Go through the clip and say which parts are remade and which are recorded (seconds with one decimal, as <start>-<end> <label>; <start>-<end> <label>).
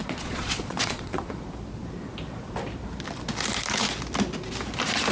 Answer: 0.0-1.4 remade; 1.4-5.1 recorded